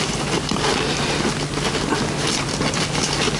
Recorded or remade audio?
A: recorded